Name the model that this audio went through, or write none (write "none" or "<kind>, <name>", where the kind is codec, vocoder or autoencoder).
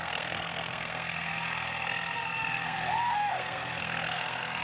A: codec, SNAC